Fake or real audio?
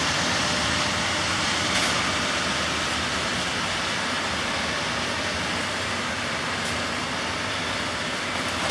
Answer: real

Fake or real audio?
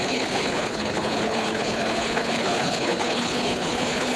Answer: fake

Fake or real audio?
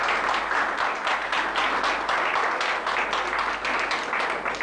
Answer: real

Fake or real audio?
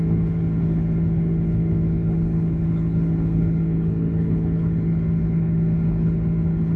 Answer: fake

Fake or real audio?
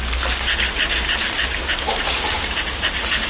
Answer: real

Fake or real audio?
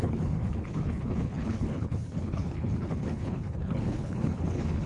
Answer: fake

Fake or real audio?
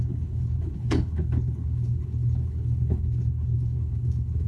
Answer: fake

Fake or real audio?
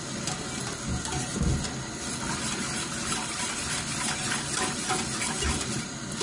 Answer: real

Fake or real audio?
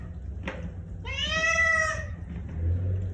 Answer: real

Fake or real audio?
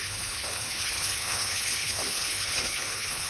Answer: fake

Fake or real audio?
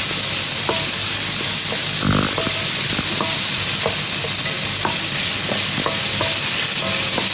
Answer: real